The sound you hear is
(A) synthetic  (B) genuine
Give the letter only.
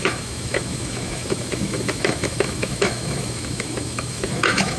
A